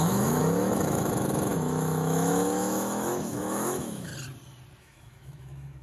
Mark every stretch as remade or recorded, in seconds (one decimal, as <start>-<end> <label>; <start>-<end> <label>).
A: 0.0-4.1 remade; 4.1-4.8 recorded; 4.8-5.8 remade